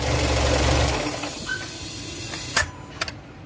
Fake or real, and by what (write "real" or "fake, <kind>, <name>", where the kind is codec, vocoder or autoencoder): real